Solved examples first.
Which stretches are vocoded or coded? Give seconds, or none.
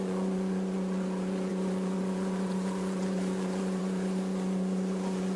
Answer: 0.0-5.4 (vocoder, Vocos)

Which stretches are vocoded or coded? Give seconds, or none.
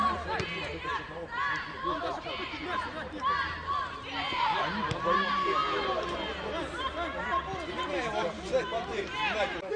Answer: 0.0-9.8 (vocoder, BigVGAN v2)